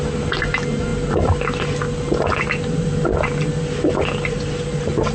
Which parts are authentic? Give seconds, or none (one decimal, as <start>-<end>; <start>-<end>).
0.0-5.1